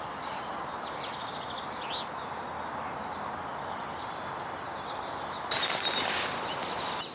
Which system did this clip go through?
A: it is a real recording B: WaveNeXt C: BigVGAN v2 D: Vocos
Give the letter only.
A